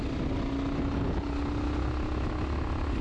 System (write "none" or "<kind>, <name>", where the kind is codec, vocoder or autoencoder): none